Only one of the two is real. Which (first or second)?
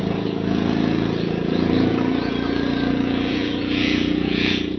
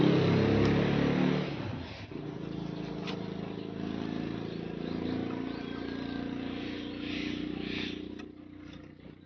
second